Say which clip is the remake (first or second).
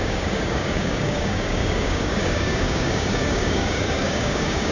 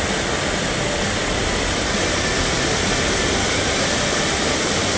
first